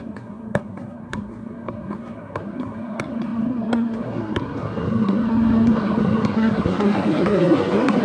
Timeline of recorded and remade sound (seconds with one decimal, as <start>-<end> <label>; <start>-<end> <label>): 0.0-8.0 remade